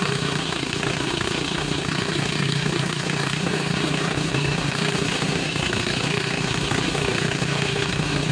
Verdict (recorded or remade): remade